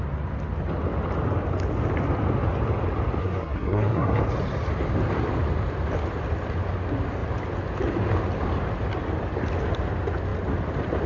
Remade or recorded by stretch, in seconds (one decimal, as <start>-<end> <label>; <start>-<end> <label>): 0.0-3.2 recorded; 3.2-4.2 remade; 4.2-11.1 recorded